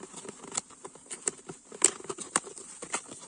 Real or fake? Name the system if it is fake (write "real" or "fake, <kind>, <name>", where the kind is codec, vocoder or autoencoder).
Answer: real